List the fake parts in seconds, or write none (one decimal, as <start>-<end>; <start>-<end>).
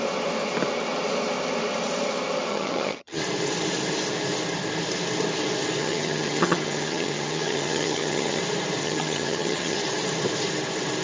2.5-3.2; 5.8-8.4; 8.8-9.8